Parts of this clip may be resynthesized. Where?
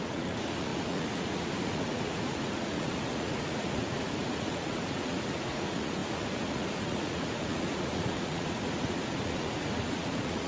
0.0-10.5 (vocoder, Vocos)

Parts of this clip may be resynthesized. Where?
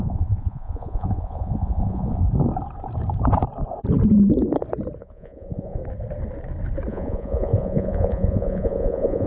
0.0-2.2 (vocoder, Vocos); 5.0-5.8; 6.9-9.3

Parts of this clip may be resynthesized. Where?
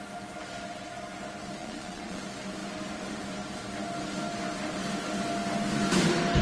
1.6-2.2 (vocoder, Vocos)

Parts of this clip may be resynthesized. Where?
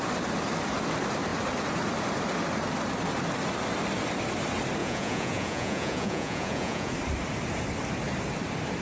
4.8-6.9 (vocoder, Vocos)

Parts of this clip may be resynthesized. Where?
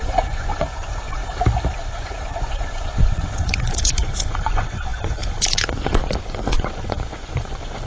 0.0-1.2 (vocoder, Vocos); 1.7-7.9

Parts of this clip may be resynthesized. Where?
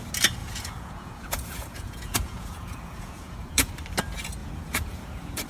0.4-3.7 (vocoder, Vocos); 4.4-5.5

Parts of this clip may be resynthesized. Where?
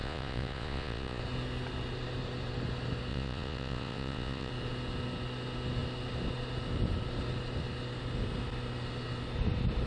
0.0-1.2 (vocoder, Vocos); 3.1-4.5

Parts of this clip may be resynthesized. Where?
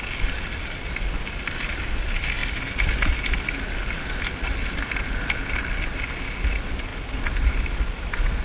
none